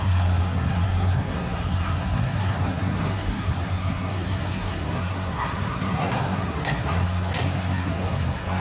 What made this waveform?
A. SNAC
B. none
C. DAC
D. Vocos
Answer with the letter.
A